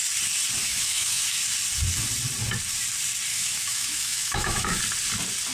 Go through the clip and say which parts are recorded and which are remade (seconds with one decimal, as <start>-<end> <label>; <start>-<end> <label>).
0.0-0.6 recorded; 0.6-1.4 remade; 1.4-3.3 recorded; 3.3-4.8 remade; 4.8-5.5 recorded